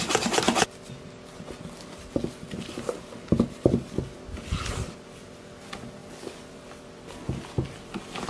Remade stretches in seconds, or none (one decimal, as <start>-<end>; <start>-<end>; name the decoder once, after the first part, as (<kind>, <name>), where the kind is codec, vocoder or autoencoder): none